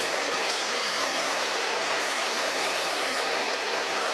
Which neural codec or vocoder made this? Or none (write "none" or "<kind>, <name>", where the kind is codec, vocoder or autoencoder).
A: codec, SNAC